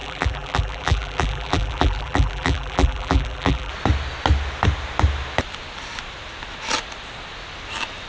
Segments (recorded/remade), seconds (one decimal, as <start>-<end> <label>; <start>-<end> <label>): 0.0-3.7 remade; 3.7-8.1 recorded